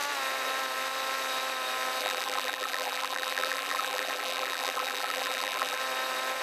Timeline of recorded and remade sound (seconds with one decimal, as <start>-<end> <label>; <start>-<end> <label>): 0.0-2.0 recorded; 2.0-5.8 remade; 5.8-6.4 recorded